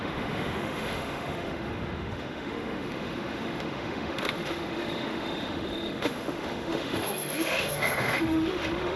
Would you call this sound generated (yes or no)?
yes